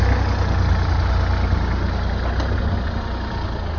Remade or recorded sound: recorded